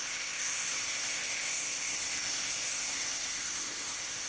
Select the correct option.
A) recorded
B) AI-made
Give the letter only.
B